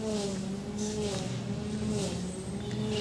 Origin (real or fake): real